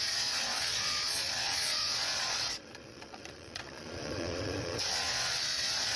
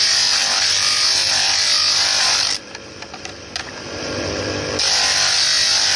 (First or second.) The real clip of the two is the second